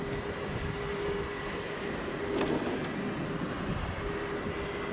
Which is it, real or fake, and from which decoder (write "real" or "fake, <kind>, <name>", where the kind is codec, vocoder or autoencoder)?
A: real